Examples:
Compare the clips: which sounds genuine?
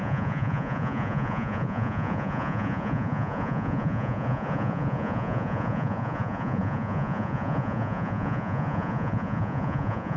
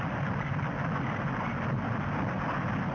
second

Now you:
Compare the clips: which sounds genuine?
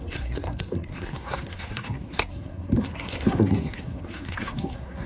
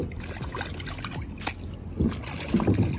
second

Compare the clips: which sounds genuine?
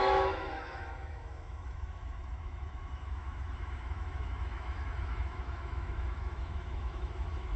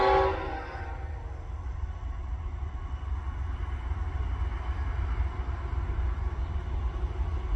second